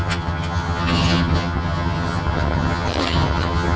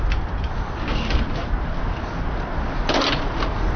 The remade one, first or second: first